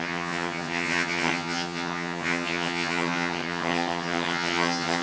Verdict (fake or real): fake